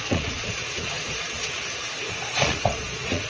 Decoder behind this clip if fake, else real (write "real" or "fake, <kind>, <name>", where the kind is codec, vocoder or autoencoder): fake, vocoder, Vocos